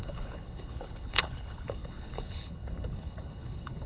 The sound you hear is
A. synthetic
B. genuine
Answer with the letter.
A